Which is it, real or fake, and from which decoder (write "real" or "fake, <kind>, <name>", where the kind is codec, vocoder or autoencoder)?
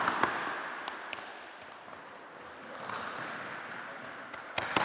real